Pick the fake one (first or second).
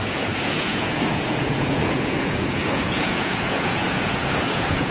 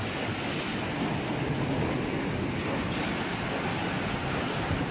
first